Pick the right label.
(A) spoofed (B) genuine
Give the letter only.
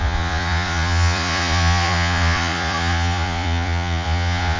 A